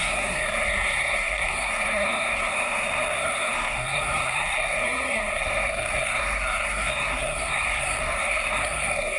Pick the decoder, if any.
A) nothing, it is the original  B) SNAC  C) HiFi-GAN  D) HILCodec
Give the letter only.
B